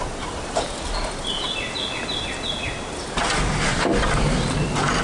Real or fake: real